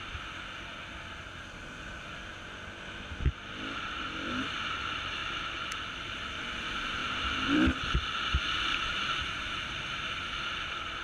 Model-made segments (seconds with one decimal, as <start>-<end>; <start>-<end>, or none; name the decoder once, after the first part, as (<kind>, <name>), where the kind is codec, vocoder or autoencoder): 5.2-6.2 (vocoder, BigVGAN v2); 7.0-7.8